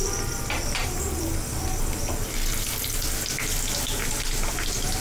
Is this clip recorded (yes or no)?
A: yes